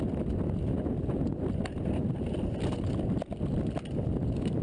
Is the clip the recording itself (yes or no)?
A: yes